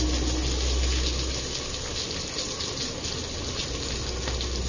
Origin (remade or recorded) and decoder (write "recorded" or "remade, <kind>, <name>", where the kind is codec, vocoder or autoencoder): recorded